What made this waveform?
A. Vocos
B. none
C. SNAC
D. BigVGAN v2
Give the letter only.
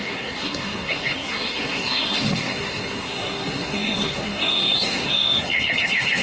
C